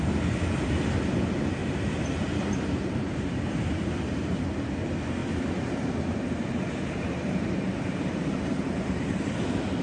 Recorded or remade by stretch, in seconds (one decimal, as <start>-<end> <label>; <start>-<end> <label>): 0.0-1.6 recorded; 1.6-4.4 remade; 4.4-5.2 recorded; 5.2-9.2 remade; 9.2-9.8 recorded